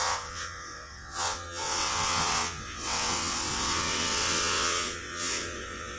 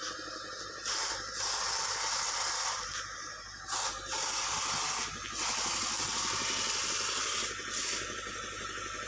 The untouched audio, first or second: second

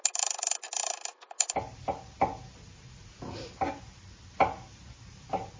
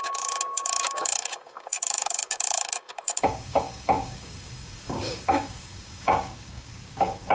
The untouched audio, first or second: first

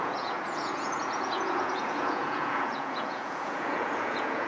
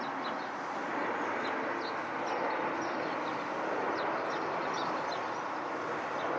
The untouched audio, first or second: second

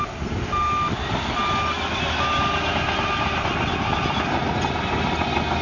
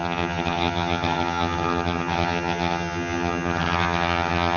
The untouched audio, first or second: first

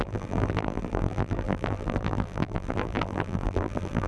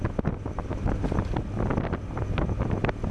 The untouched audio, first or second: second